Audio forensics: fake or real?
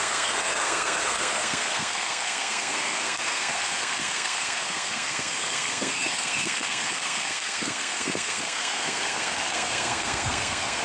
fake